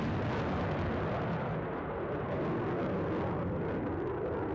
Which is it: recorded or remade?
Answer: recorded